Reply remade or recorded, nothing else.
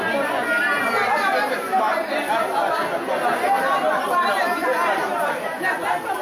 recorded